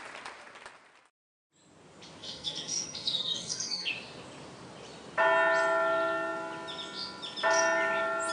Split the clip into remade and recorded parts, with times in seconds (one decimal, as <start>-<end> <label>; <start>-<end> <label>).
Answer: 0.0-2.2 recorded; 2.2-3.9 remade; 3.9-8.3 recorded